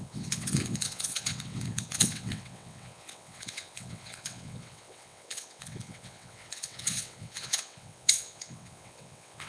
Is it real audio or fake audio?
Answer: fake